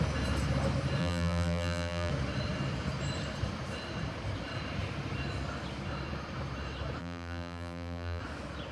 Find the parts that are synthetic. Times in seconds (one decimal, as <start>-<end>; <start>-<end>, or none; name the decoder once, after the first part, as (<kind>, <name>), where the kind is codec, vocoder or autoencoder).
1.0-2.1 (vocoder, BigVGAN v2); 7.0-8.2